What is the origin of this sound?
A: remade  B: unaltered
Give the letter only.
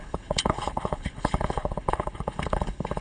A